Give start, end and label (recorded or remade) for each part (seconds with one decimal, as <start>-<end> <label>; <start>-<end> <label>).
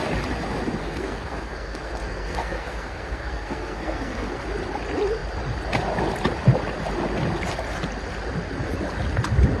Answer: 0.0-0.8 recorded; 0.8-4.4 remade; 4.4-9.6 recorded